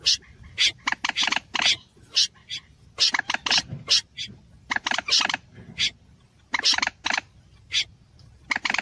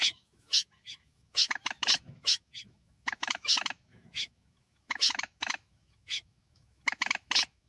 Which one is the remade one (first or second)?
second